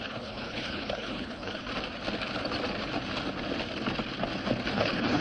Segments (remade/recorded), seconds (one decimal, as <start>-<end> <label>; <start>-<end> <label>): 0.0-1.6 remade; 1.6-4.7 recorded; 4.7-5.2 remade